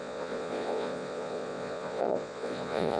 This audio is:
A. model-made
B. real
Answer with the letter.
A